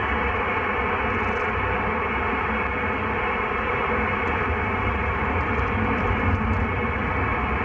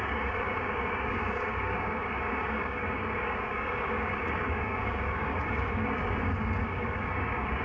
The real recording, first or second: first